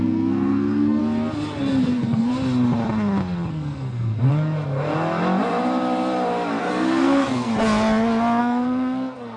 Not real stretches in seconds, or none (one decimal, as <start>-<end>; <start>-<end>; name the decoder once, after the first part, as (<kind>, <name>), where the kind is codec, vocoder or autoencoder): 0.0-1.0 (codec, SNAC); 1.6-2.3; 3.5-4.3; 6.6-7.5; 8.4-9.4